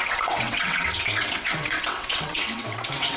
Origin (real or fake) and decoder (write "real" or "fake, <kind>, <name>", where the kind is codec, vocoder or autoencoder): fake, vocoder, WaveNeXt